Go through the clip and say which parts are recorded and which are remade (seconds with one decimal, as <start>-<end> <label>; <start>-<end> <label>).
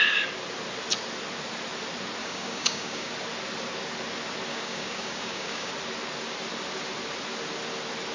0.0-2.2 recorded; 2.2-3.1 remade; 3.1-4.5 recorded; 4.5-5.7 remade; 5.7-8.1 recorded